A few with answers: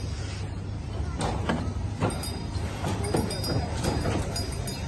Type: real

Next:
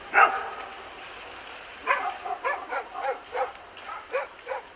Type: fake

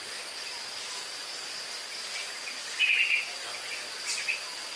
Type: real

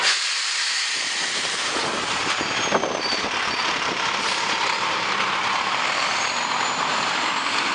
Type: fake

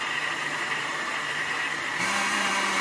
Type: fake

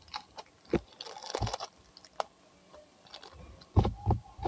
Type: real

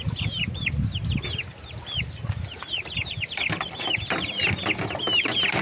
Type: real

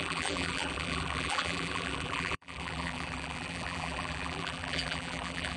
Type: fake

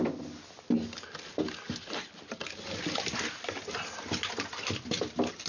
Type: real